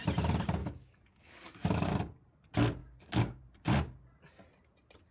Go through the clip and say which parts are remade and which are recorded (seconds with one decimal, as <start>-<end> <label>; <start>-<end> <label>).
0.0-0.6 recorded; 0.6-1.9 remade; 1.9-2.8 recorded; 2.8-3.4 remade; 3.4-5.1 recorded